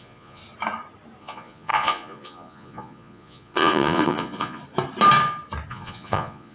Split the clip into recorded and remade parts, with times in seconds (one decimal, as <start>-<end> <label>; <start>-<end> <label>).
0.0-0.4 remade; 0.4-1.2 recorded; 1.2-4.6 remade; 4.6-5.7 recorded; 5.7-6.5 remade